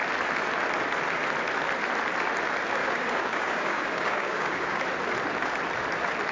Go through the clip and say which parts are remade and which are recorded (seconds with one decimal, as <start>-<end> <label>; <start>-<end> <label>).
0.0-2.8 recorded; 2.8-4.8 remade; 4.8-6.3 recorded